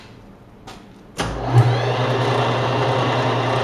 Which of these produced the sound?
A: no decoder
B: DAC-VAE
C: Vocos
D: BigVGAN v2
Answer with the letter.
A